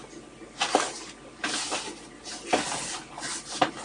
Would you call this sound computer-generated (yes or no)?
no